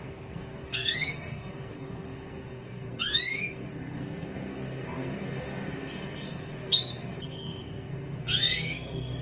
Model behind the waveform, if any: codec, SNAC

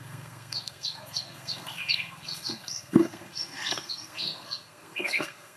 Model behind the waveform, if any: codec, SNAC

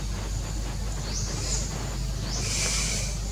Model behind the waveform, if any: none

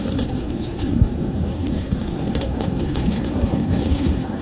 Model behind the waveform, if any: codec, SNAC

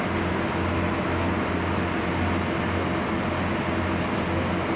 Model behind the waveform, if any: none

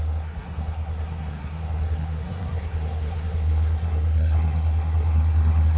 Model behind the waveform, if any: codec, SNAC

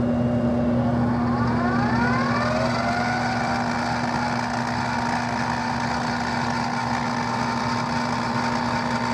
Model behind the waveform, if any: none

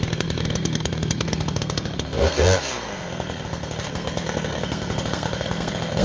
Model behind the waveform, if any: codec, SNAC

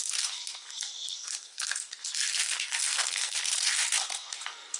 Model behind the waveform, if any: codec, SNAC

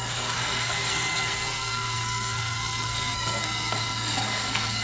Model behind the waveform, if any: codec, SNAC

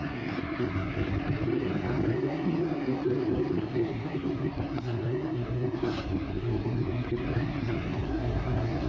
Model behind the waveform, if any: codec, SNAC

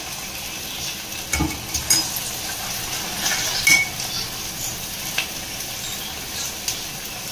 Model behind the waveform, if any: none